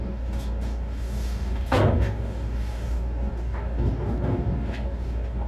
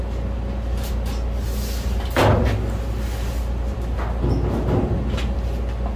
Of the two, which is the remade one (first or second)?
first